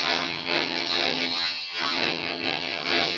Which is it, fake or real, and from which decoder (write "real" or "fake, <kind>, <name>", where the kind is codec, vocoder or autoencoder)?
fake, vocoder, HiFi-GAN